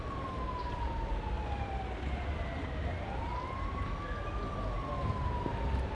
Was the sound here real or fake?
real